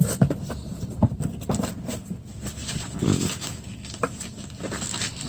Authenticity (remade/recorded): remade